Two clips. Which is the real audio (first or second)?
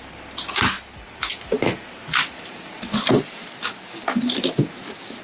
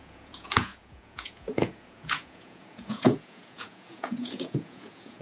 first